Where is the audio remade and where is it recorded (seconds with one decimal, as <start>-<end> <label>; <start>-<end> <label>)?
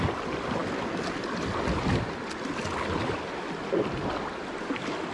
0.0-5.1 recorded